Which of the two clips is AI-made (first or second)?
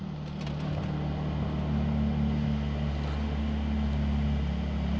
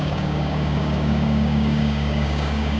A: second